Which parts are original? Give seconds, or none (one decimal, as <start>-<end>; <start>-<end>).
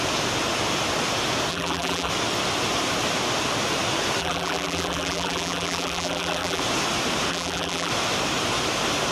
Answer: 0.0-1.5; 2.1-4.2; 6.6-7.3; 7.9-9.1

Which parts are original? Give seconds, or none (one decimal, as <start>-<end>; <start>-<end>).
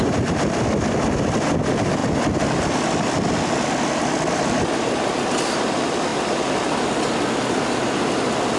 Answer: none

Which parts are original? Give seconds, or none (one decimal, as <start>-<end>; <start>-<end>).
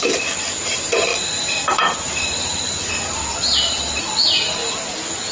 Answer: 0.0-1.1; 2.9-5.3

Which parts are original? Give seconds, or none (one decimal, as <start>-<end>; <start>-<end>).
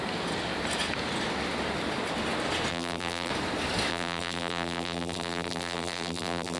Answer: 0.0-2.7; 3.3-3.9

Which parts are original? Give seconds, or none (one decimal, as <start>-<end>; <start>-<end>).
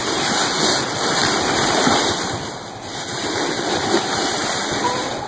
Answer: 0.0-5.3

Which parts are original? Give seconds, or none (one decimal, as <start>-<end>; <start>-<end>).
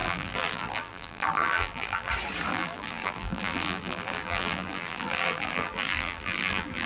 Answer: 2.1-2.5